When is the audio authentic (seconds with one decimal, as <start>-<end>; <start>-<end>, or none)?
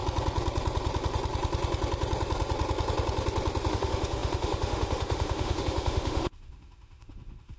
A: 0.0-3.7